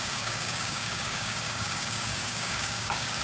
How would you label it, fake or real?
fake